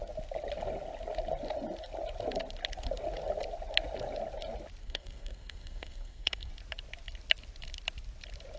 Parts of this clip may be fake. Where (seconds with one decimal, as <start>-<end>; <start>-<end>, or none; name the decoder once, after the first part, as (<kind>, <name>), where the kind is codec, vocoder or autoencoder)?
4.8-6.5 (codec, SNAC)